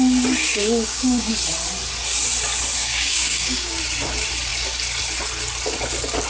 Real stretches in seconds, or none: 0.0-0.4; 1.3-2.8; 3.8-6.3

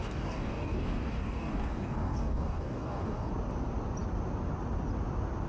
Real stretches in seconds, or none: 3.3-5.5